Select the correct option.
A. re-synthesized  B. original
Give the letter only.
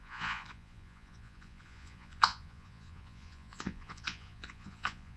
A